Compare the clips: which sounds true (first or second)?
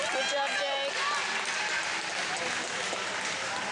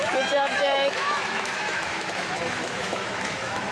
first